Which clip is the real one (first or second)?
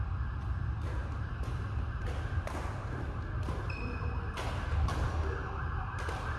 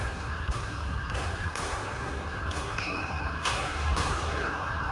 first